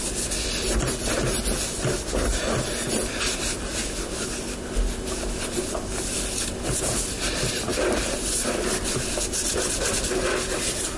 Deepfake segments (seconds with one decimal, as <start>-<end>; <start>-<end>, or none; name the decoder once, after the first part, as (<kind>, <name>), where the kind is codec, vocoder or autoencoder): none